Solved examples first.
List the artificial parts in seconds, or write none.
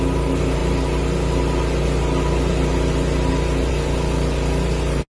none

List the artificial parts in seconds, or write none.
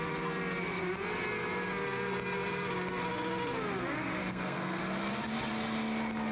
4.2-4.8 (codec, SNAC)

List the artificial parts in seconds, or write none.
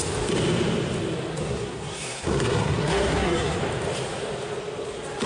1.3-3.6 (codec, SNAC)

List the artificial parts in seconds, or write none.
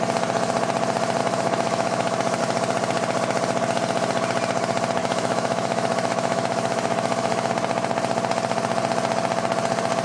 1.2-2.4 (autoencoder, DAC-VAE); 5.0-7.5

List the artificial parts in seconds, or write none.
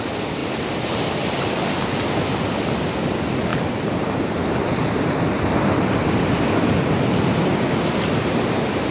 none